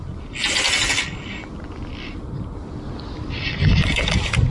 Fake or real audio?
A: real